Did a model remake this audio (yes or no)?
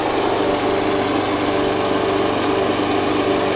no